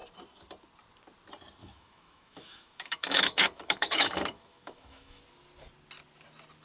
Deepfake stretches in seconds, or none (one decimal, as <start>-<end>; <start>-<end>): 1.6-5.2